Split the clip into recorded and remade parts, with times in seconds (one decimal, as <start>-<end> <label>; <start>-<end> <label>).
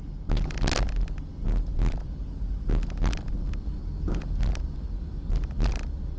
0.0-6.2 recorded